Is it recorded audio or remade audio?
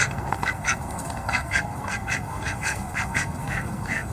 remade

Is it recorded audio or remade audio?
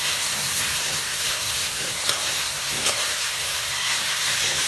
remade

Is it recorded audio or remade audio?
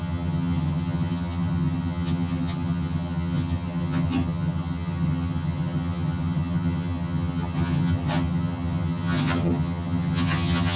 remade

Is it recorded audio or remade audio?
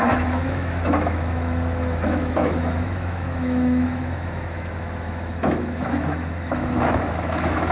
remade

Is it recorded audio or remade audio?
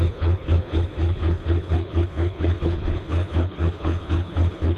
remade